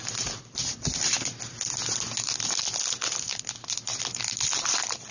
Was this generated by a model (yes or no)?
no